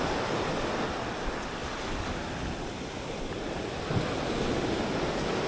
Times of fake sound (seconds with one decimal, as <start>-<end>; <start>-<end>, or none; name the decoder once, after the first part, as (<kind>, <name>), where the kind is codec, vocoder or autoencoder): none